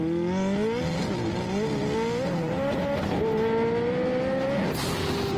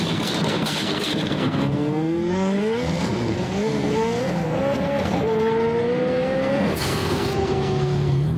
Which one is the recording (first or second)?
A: first